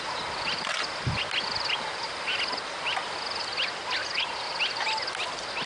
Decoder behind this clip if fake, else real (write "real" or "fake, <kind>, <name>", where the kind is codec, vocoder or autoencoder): real